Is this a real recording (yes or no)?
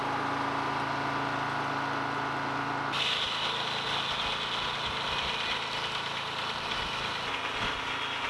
yes